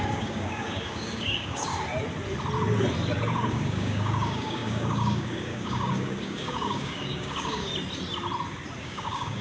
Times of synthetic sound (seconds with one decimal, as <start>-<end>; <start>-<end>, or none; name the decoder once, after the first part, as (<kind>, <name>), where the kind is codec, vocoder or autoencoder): 0.0-1.7 (codec, DAC); 3.5-7.7; 8.8-9.4

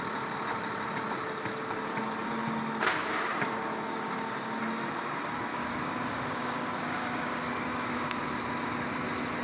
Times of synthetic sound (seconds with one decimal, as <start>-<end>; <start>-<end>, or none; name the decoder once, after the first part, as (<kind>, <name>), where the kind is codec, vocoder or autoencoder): 3.0-4.6 (codec, DAC); 5.5-8.2

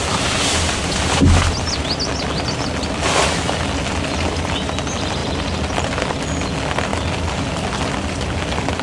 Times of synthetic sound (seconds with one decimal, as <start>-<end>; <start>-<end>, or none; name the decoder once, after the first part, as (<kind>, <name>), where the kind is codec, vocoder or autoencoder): none

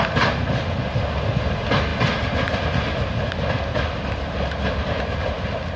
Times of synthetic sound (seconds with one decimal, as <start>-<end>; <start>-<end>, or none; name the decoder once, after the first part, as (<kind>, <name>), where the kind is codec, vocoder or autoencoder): none